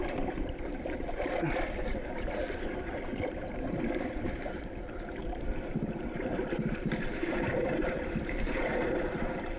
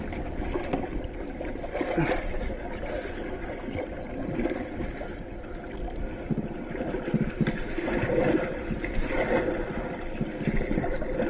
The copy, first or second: first